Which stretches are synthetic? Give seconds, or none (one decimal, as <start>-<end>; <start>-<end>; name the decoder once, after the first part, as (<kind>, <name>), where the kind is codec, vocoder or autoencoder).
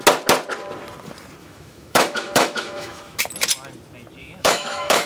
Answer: 1.4-3.2 (autoencoder, DAC-VAE); 4.2-5.1